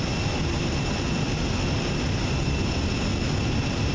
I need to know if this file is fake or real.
real